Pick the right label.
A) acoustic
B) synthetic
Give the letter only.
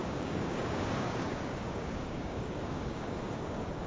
B